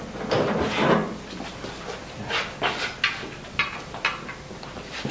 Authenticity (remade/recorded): recorded